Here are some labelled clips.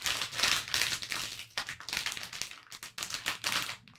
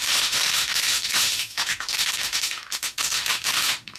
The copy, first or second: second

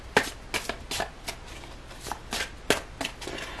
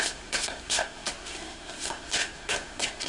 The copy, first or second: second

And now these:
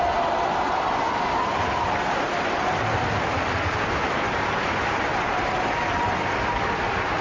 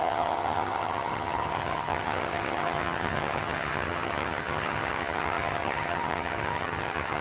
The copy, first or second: second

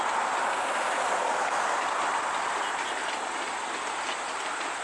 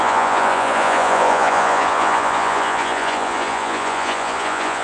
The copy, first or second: second